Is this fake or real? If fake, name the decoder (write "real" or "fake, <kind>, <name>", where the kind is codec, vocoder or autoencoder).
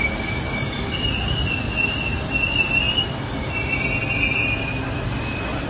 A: real